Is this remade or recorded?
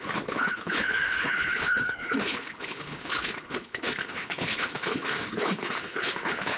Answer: remade